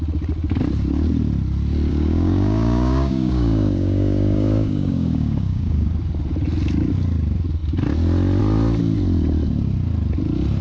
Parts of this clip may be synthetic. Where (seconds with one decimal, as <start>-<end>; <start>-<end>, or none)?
1.9-5.9